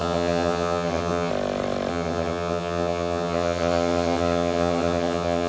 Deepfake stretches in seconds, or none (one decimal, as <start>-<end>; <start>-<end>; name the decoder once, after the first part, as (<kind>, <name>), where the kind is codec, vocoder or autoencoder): 0.0-1.3 (vocoder, HiFi-GAN); 1.9-5.5